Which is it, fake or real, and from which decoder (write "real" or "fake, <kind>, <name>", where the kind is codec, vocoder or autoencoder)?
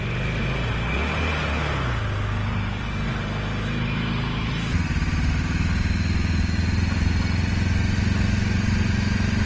real